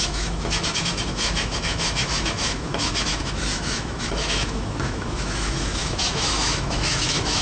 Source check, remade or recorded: remade